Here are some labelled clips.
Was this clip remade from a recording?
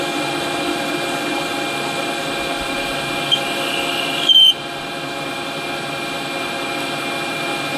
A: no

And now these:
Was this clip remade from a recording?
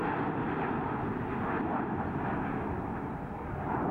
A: no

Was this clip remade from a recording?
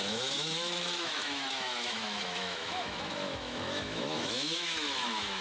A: yes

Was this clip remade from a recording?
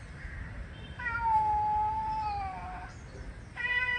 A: no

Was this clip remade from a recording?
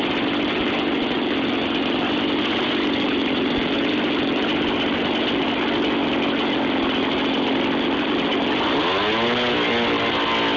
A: no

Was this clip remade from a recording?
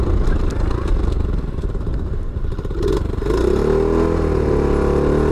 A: no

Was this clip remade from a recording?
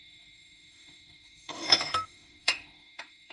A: yes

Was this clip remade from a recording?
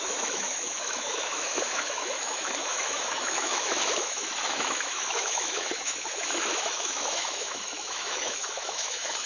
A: yes